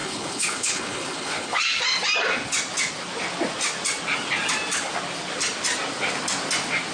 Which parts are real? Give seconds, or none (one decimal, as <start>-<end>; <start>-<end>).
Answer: 1.6-6.9